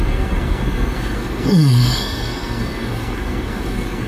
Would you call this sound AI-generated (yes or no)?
yes